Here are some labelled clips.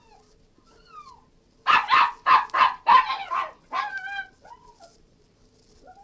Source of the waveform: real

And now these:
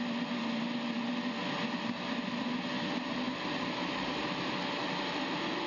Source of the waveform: real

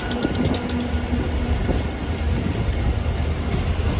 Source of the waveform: real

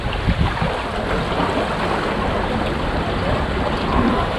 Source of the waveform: real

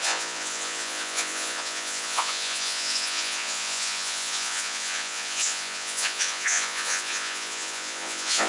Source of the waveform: fake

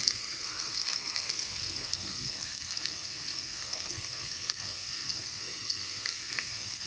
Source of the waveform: fake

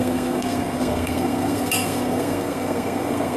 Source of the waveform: fake